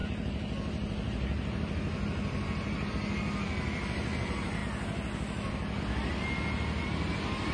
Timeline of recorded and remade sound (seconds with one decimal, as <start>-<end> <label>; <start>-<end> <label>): 0.0-7.5 recorded